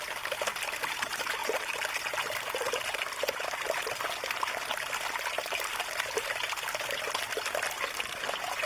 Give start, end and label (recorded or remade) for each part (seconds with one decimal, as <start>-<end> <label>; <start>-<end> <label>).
0.0-8.7 recorded